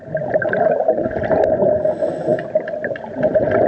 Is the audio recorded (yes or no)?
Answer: yes